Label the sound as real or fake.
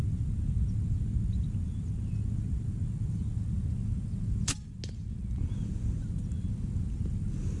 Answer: real